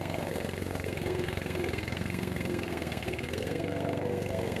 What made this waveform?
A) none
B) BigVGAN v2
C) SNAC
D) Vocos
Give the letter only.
C